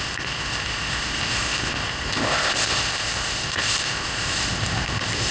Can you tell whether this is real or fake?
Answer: fake